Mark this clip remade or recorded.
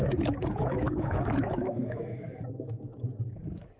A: remade